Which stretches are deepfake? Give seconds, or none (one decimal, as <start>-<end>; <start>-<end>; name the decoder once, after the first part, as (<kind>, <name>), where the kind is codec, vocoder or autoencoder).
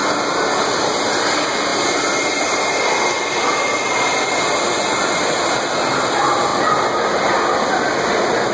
none